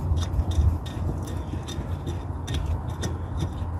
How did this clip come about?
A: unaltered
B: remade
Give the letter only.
A